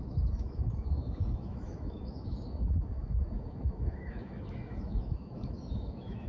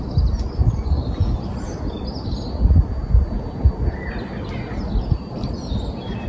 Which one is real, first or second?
second